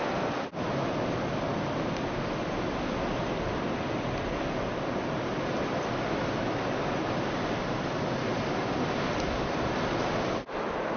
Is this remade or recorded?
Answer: recorded